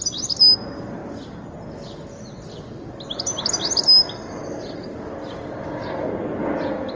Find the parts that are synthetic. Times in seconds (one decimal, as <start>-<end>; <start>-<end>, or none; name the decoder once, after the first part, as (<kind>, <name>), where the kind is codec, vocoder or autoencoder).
none

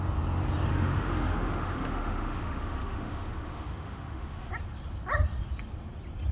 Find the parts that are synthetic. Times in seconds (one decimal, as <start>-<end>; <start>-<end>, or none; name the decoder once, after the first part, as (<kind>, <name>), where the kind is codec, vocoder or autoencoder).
0.7-4.5 (autoencoder, DAC-VAE)

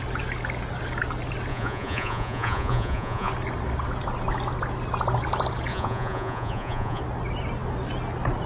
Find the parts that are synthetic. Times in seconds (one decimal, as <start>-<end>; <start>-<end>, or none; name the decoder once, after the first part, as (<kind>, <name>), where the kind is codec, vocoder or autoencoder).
1.5-3.3 (vocoder, Vocos); 5.7-7.0

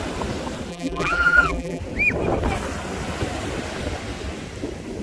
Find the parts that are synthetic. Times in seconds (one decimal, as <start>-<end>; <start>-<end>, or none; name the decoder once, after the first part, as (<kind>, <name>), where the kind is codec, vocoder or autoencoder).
0.7-1.8 (vocoder, BigVGAN v2)

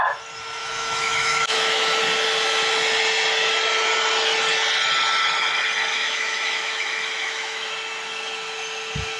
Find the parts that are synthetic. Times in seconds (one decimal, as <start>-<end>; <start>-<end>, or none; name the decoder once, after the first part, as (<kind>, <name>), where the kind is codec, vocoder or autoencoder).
0.6-2.0 (autoencoder, DAC-VAE); 5.9-7.7

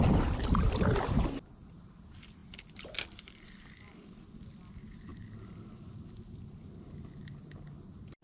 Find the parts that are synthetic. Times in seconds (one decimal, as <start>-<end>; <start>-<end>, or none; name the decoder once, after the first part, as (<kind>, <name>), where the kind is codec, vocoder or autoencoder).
none

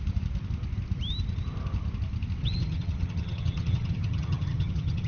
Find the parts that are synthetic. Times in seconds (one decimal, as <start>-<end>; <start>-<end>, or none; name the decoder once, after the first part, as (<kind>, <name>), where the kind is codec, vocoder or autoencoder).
2.4-5.1 (vocoder, HiFi-GAN)